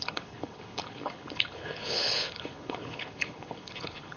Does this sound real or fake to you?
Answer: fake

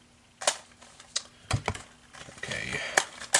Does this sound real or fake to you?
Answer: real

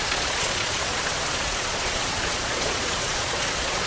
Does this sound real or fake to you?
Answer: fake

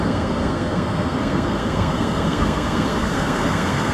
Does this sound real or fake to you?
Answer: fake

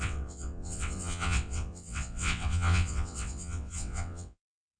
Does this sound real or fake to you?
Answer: fake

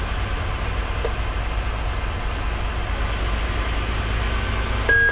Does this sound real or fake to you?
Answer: real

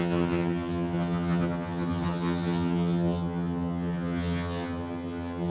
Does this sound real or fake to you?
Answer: fake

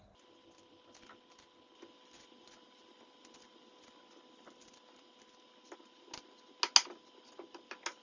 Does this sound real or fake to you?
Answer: real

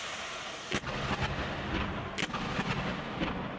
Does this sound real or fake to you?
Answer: real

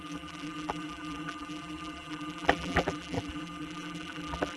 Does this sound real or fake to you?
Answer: fake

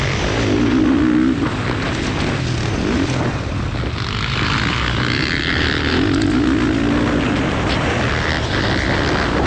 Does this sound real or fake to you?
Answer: real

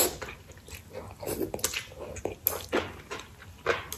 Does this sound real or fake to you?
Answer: real